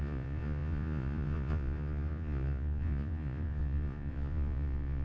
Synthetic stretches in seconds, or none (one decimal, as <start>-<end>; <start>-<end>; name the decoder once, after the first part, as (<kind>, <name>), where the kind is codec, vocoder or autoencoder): 0.0-5.0 (vocoder, Vocos)